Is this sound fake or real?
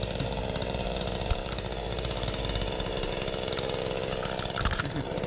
fake